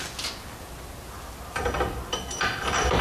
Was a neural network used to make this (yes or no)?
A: no